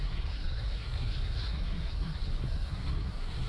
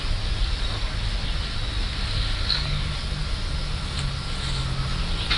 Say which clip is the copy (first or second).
first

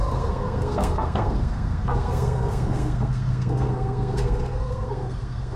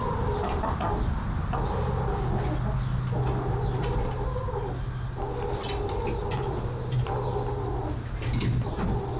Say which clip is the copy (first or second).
first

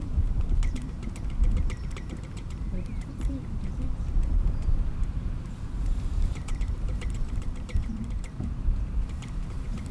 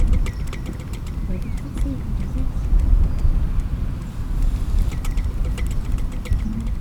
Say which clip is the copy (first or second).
first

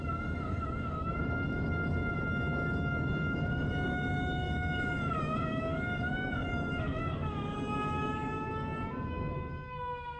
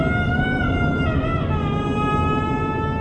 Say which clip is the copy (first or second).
first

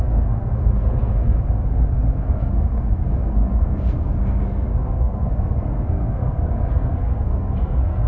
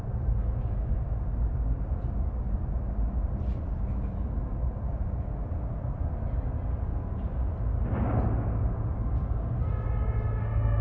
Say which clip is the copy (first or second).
first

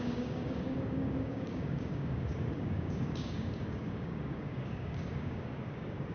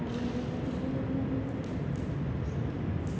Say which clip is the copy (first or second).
first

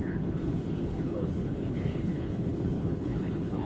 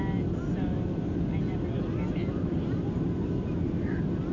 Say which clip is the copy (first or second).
first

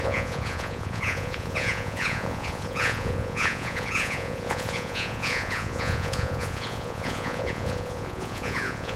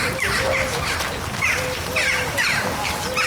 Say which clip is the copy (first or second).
first